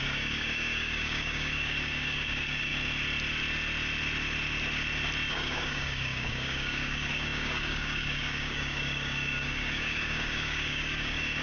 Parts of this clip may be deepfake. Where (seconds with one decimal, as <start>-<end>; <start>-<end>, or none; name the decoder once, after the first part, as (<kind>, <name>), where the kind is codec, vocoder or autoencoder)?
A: 0.0-2.7 (codec, DAC); 5.3-11.4